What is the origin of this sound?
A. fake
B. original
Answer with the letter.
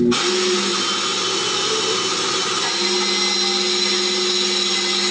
B